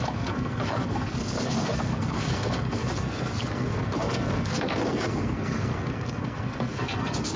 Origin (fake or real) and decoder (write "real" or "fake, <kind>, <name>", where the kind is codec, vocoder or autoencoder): fake, codec, SNAC